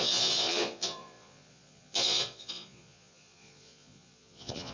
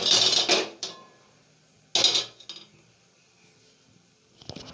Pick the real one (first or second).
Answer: second